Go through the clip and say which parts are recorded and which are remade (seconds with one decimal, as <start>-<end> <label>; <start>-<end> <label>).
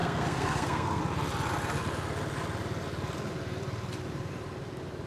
0.0-1.0 remade; 1.0-5.1 recorded